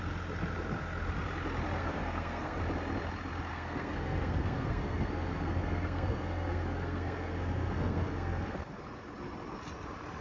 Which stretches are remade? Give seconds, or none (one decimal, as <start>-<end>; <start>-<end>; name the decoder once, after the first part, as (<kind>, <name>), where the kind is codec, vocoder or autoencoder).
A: 1.8-2.6 (codec, SNAC); 3.5-8.8